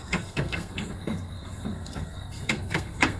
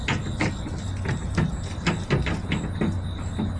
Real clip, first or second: second